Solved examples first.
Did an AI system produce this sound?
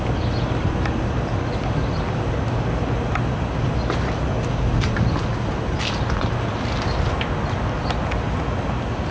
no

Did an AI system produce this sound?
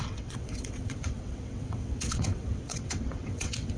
yes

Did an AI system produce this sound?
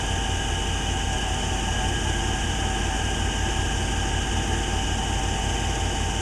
no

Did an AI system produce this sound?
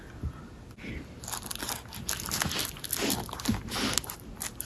no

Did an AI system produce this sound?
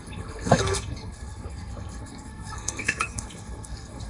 yes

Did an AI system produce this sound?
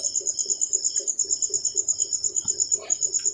yes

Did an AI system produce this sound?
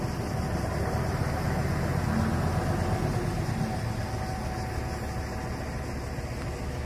no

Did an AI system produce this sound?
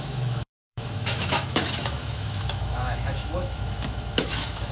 yes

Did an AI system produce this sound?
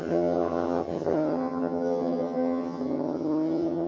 yes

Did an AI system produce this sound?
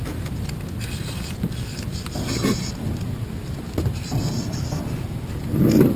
no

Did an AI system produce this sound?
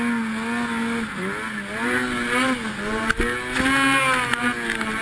no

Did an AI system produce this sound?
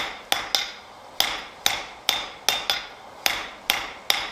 no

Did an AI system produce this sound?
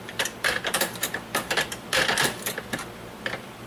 yes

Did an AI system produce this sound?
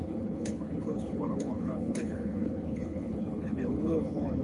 yes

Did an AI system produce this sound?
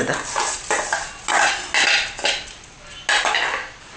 no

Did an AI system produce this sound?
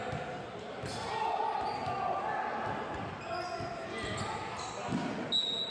no